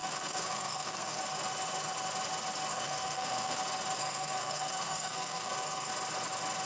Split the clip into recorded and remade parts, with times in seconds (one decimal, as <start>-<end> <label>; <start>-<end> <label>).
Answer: 0.0-1.2 remade; 1.2-2.7 recorded; 2.7-3.6 remade; 3.6-4.0 recorded; 4.0-5.9 remade; 5.9-6.7 recorded